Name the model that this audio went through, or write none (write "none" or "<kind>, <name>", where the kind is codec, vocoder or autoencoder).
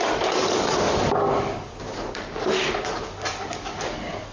codec, DAC